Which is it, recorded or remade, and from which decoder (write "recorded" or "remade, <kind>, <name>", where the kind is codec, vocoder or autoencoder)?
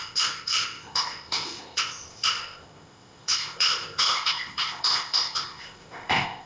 remade, codec, ZipCodec